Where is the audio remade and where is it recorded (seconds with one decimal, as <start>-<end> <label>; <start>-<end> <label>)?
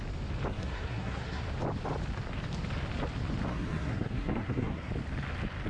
0.0-0.5 recorded; 0.5-1.4 remade; 1.4-3.5 recorded; 3.5-4.9 remade; 4.9-5.7 recorded